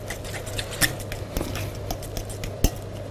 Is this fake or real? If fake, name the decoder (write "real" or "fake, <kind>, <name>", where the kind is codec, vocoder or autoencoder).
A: real